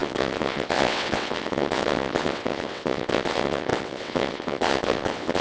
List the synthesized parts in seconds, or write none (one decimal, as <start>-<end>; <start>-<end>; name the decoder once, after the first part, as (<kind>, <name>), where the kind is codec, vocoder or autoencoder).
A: 0.0-5.4 (vocoder, WaveNeXt)